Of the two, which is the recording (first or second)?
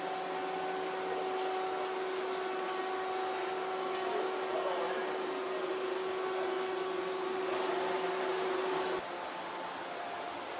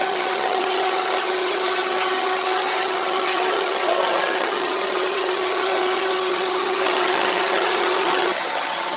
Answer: first